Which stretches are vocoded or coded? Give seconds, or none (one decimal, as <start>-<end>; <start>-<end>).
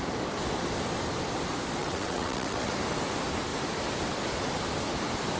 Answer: 1.8-2.7